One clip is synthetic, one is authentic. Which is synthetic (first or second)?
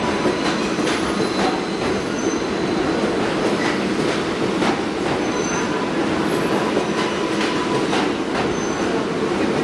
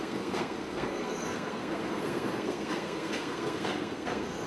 second